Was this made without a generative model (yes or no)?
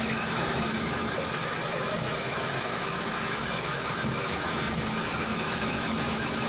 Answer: no